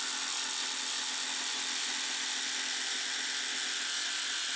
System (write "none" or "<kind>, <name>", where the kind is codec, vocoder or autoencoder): none